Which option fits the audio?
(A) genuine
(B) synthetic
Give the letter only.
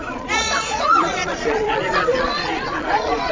B